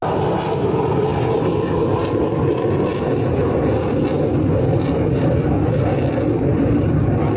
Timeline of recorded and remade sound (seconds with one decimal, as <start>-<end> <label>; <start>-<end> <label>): 0.0-7.4 recorded